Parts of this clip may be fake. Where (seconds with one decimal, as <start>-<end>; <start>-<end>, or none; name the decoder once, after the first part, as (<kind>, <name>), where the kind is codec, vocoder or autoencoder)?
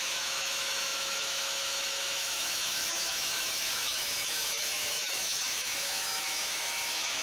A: 0.0-7.2 (autoencoder, DAC-VAE)